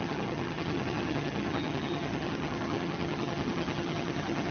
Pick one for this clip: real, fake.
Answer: fake